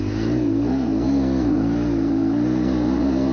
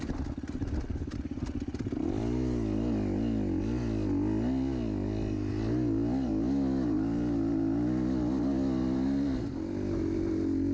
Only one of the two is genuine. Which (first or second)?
second